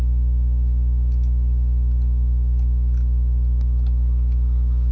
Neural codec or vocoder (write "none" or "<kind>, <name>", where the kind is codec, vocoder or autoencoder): none